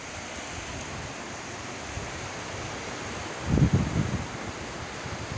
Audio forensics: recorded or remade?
recorded